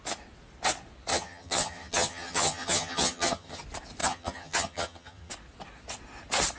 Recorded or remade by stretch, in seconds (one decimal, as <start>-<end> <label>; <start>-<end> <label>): 0.0-1.1 recorded; 1.1-3.6 remade; 3.6-4.0 recorded; 4.0-5.3 remade; 5.3-6.6 recorded